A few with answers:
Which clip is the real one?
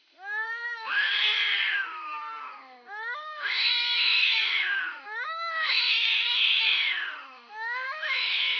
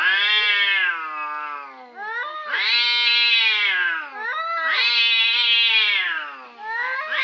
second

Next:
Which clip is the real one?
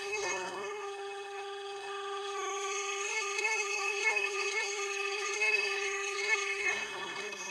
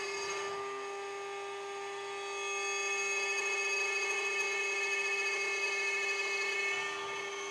second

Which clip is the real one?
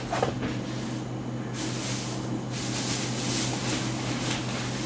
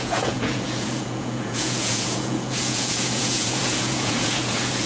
first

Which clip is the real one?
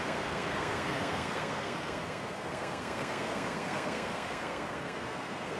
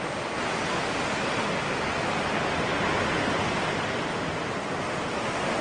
second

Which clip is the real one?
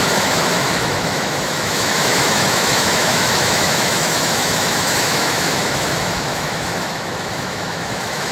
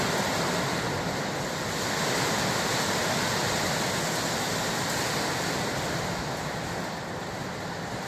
second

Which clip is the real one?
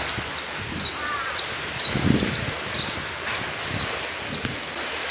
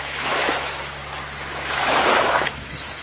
first